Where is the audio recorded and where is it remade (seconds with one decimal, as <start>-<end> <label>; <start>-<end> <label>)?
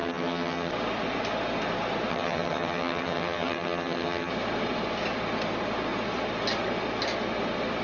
0.0-0.7 remade; 0.7-2.1 recorded; 2.1-4.3 remade; 4.3-7.8 recorded